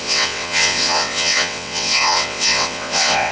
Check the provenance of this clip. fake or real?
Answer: fake